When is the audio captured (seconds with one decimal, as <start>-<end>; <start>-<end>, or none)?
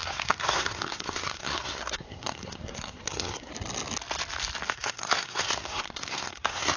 3.5-4.7